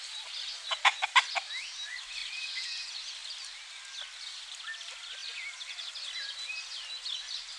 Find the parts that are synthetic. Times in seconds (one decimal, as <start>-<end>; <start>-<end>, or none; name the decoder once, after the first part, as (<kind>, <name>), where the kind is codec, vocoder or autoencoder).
none